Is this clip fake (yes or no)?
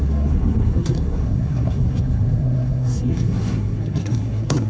yes